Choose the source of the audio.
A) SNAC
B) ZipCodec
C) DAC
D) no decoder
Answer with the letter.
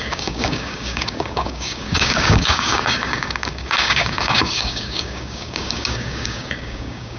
C